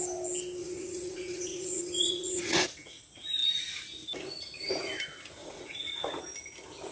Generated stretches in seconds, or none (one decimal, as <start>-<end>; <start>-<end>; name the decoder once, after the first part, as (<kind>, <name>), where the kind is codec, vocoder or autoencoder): 0.6-3.0 (vocoder, Vocos); 5.4-6.2